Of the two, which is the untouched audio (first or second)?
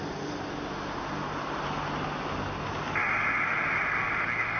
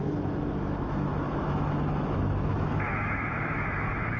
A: first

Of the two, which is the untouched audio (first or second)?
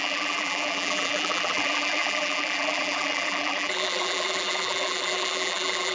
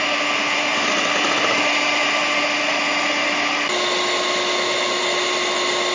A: second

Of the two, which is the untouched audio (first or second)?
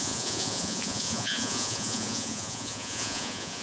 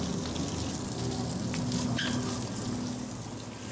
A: second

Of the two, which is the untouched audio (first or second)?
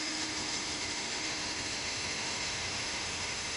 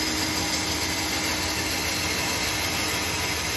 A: second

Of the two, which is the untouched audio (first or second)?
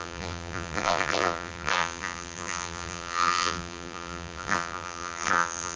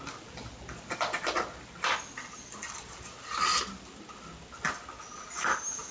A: second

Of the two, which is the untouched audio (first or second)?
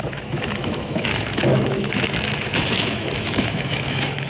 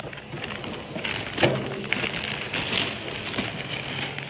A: second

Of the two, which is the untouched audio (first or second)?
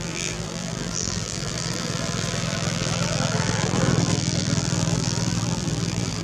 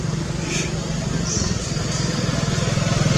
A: second